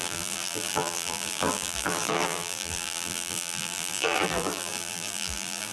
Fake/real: fake